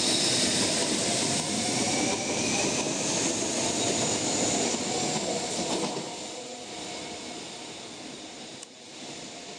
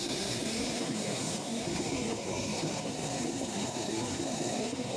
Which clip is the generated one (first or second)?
second